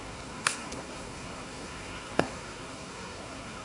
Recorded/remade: remade